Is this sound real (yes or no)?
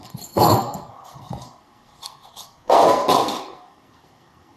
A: no